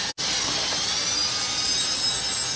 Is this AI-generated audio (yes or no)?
no